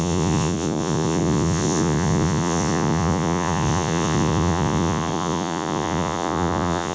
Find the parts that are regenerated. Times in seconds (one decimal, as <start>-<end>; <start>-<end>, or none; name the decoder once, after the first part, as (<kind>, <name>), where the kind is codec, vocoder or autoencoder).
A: 0.0-6.9 (vocoder, Vocos)